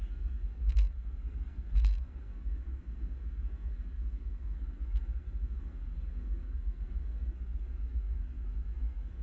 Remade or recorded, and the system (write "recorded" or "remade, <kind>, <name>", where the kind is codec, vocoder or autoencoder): remade, codec, SNAC